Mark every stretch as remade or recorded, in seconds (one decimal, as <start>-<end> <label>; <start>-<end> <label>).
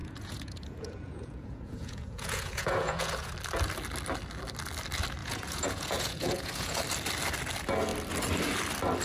0.0-3.3 remade; 3.3-5.2 recorded; 5.2-6.8 remade; 6.8-9.0 recorded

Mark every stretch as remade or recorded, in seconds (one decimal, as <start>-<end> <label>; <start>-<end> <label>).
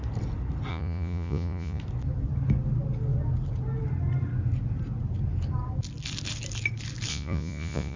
0.0-0.7 recorded; 0.7-1.8 remade; 1.8-7.1 recorded; 7.1-8.0 remade